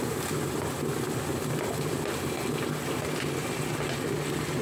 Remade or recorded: recorded